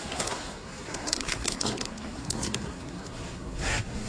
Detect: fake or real fake